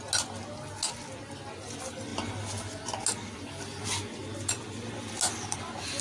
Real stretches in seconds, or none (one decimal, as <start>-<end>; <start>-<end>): 0.0-6.0